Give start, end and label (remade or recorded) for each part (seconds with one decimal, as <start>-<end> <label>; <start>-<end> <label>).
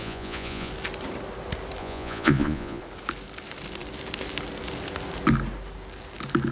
0.0-0.7 remade; 0.7-1.8 recorded; 1.8-2.8 remade; 2.8-6.5 recorded